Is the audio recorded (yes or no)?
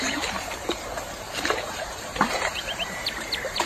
no